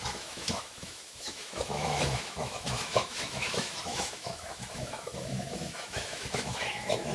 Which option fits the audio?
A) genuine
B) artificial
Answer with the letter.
B